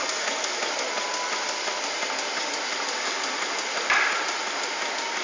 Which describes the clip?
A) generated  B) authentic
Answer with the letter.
B